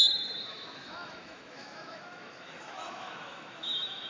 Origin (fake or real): fake